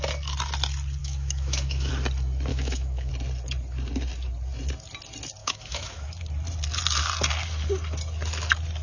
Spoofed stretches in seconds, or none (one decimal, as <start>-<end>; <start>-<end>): 1.0-1.9; 2.5-3.1; 5.4-6.1